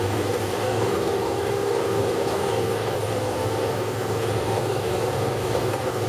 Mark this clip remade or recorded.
remade